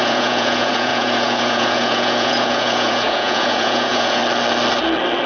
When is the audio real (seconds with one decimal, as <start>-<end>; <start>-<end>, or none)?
4.2-5.3